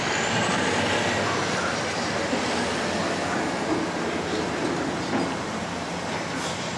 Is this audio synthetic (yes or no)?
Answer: no